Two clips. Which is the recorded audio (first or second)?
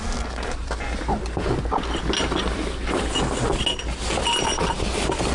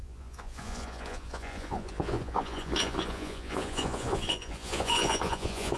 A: first